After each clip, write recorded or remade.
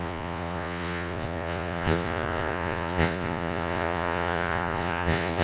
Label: remade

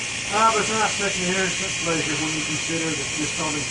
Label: recorded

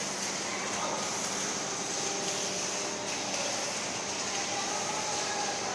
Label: recorded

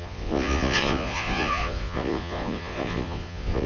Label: remade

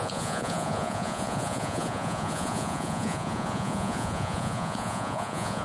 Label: remade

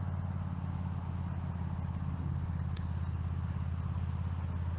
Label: recorded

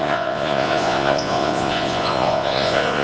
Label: remade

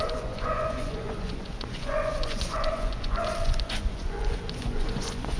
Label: remade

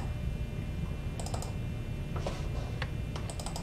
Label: recorded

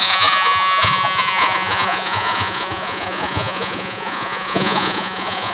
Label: remade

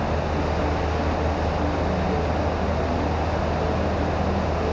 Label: recorded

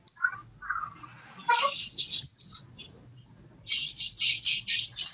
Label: recorded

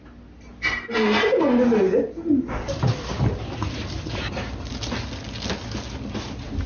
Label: recorded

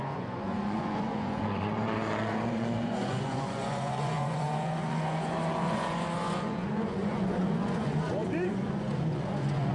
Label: remade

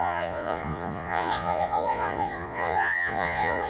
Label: remade